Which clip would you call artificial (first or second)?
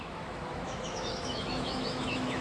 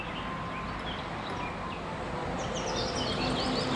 first